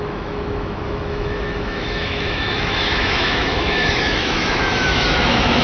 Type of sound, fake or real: fake